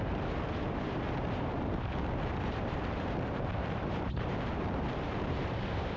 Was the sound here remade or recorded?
remade